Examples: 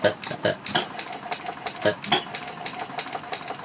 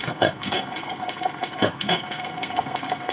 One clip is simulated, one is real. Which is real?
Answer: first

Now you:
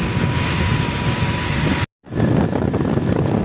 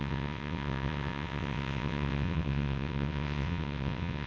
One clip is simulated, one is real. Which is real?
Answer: first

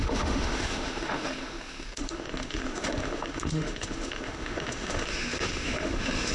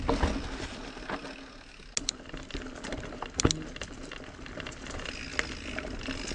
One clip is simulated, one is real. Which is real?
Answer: second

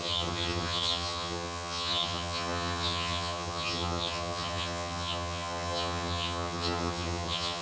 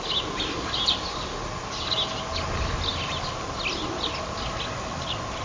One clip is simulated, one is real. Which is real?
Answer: second